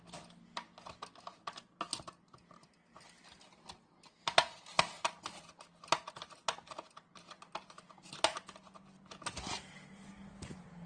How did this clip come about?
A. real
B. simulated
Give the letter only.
A